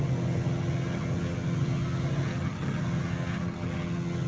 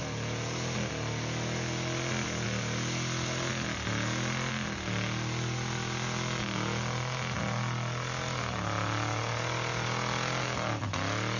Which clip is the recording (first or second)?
second